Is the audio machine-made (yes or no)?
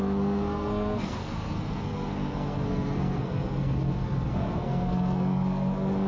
yes